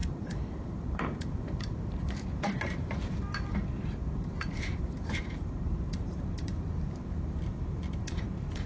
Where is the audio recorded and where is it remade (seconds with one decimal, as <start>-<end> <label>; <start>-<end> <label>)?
0.0-8.7 remade